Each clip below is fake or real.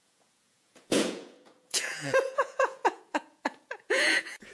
fake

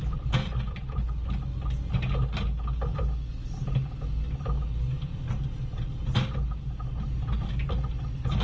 real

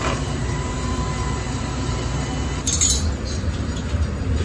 fake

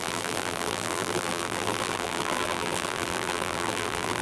fake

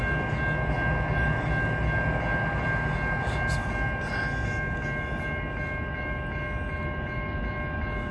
real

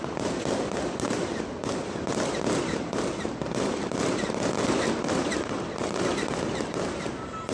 real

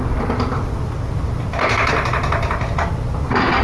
real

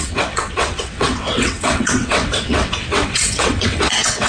fake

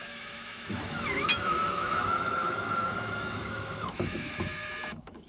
fake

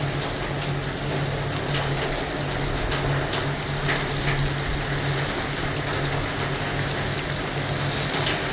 real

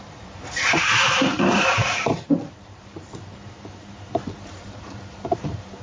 fake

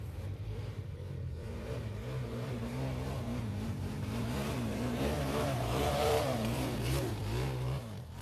fake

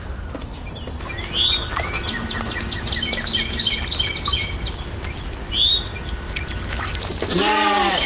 real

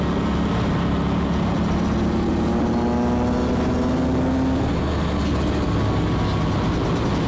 real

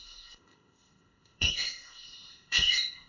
fake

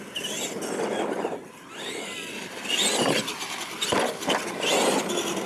real